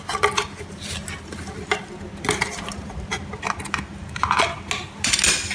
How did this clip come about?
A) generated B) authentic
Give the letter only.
B